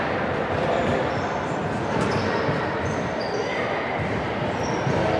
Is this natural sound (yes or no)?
no